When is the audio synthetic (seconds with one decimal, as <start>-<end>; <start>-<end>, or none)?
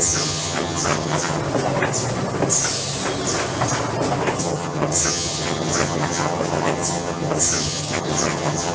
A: 0.0-1.4; 4.4-8.7